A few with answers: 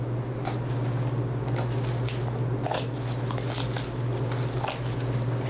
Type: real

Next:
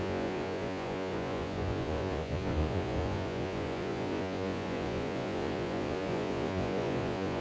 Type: fake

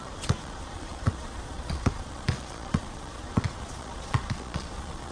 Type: fake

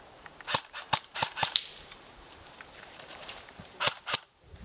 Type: fake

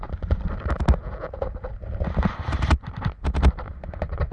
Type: real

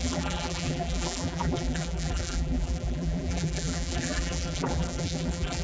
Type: fake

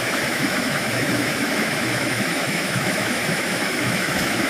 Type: fake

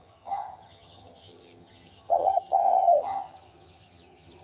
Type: fake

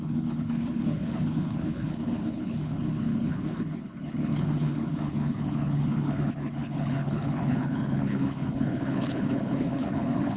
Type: fake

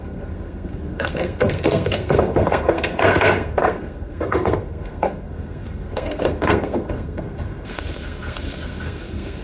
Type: fake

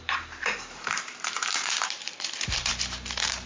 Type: fake